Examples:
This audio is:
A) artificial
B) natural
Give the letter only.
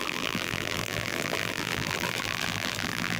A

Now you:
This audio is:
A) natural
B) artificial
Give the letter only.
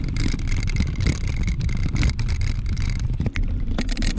A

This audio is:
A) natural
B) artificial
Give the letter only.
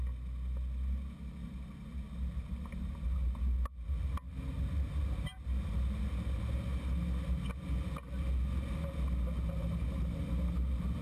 A